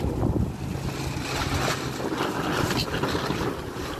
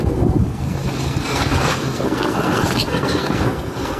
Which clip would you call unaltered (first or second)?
first